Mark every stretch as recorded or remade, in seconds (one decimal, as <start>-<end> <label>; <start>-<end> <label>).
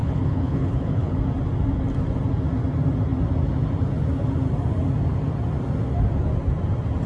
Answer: 0.0-1.2 remade; 1.2-7.1 recorded